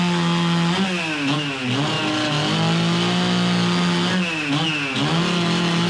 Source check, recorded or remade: recorded